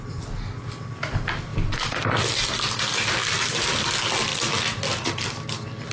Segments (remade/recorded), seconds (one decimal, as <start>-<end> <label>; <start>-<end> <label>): 0.0-1.5 recorded; 1.5-2.2 remade; 2.2-5.9 recorded